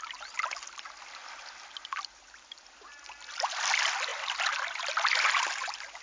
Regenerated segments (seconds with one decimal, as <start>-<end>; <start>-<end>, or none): none